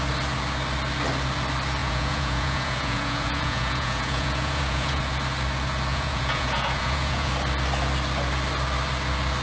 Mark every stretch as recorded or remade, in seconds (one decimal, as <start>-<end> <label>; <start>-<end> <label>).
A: 0.0-1.8 recorded; 1.8-5.0 remade; 5.0-5.9 recorded; 5.9-7.3 remade; 7.3-9.4 recorded